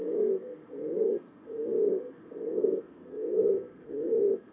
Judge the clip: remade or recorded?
remade